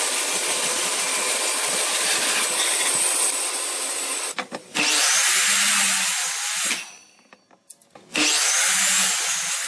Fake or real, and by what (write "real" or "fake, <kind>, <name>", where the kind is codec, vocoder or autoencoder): real